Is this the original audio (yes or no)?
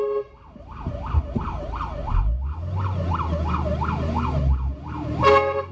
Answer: yes